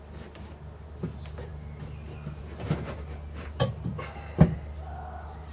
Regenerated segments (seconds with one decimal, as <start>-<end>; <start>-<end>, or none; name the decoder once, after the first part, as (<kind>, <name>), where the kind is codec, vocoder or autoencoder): none